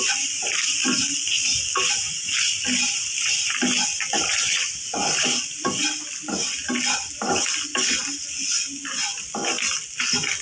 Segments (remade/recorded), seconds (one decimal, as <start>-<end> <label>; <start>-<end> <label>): 0.0-10.4 recorded